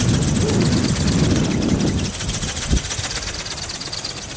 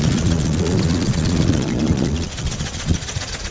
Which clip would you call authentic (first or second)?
first